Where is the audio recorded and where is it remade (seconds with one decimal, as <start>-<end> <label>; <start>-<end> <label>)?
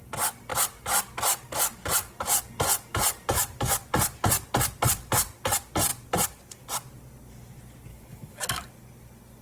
0.0-7.9 recorded; 7.9-8.7 remade; 8.7-9.4 recorded